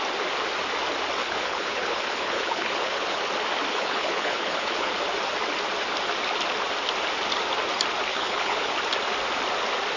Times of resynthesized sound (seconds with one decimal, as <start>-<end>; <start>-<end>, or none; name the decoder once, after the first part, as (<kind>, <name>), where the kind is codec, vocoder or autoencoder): 1.2-3.2 (codec, HILCodec); 3.7-4.9; 8.1-8.7